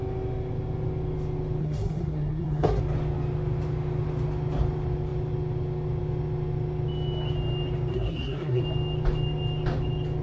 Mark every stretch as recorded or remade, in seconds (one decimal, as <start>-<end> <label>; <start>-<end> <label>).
0.0-1.6 recorded; 1.6-2.8 remade; 2.8-7.9 recorded; 7.9-8.6 remade; 8.6-10.2 recorded